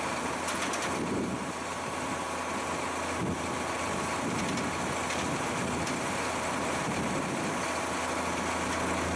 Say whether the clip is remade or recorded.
recorded